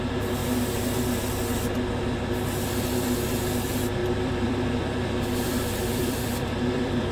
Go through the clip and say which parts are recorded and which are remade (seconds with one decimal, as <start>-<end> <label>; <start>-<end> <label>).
0.0-4.0 recorded; 4.0-7.1 remade